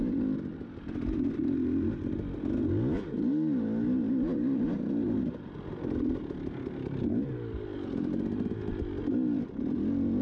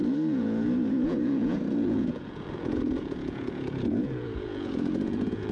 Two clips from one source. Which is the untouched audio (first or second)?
first